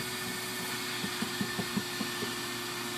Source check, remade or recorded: recorded